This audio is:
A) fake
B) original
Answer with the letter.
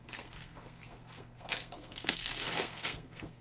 A